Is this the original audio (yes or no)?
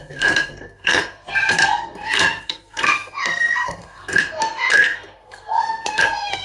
no